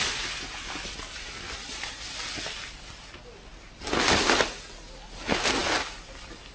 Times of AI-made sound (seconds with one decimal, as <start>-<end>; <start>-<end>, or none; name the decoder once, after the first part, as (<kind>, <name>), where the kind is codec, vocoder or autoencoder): none